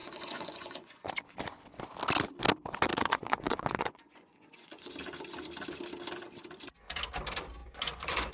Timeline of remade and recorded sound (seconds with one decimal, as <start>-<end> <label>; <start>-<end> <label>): 0.0-1.1 remade; 1.1-2.9 recorded; 2.9-4.9 remade; 4.9-7.6 recorded; 7.6-8.3 remade